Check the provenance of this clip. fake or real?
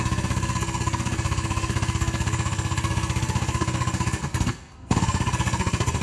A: fake